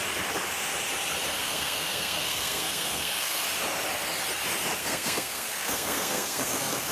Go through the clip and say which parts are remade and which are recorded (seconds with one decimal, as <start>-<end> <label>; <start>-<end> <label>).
0.0-1.4 recorded; 1.4-3.4 remade; 3.4-4.8 recorded; 4.8-6.9 remade